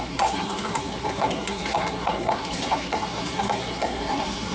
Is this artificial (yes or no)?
yes